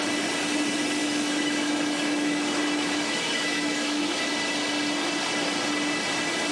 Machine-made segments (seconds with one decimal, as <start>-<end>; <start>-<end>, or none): 1.0-4.3